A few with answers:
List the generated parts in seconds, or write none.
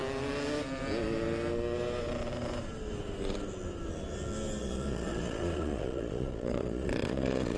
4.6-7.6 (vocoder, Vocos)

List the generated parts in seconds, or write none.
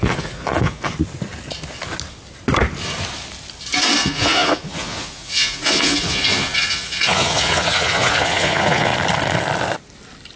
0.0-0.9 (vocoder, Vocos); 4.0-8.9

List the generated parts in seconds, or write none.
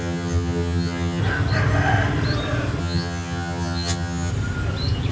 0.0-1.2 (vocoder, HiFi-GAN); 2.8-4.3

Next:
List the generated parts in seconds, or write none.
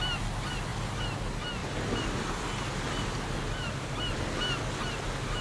none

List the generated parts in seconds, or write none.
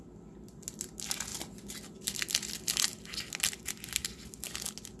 none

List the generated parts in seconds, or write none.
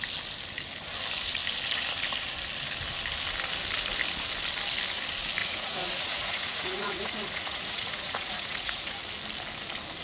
5.4-9.0 (vocoder, Vocos)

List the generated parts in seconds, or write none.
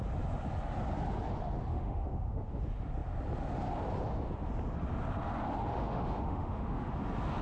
1.7-2.6 (autoencoder, DAC-VAE); 5.7-6.9